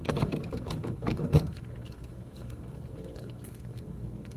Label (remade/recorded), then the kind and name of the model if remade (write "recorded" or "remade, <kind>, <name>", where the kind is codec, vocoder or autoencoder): remade, codec, SNAC